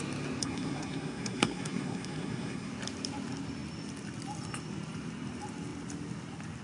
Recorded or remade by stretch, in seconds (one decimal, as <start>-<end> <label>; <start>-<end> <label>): 0.0-0.4 recorded; 0.4-2.7 remade; 2.7-6.6 recorded